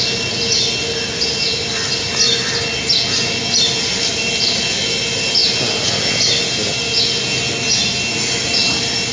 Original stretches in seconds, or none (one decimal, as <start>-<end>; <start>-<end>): 0.0-9.1